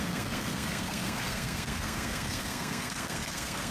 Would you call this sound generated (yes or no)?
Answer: yes